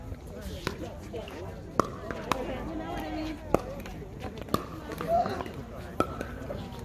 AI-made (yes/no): no